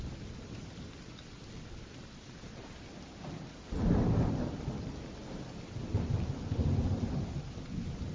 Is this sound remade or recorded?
recorded